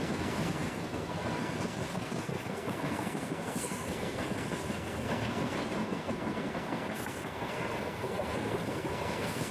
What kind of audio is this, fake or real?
fake